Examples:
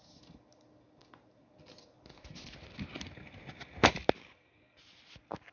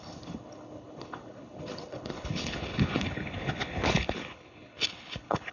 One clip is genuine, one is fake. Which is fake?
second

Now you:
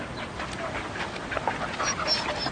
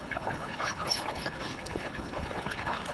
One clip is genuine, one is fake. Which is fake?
second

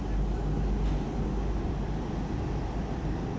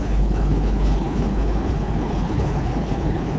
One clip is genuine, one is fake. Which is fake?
second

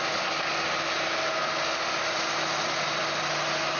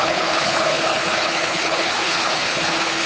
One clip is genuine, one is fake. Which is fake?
second